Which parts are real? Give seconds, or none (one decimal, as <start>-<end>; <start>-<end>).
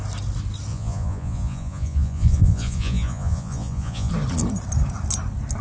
0.0-0.7; 4.1-5.6